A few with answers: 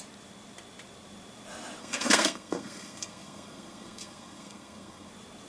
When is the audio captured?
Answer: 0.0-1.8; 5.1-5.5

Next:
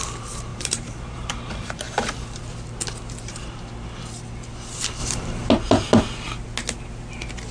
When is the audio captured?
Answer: 0.0-0.5; 2.4-5.0; 5.5-7.5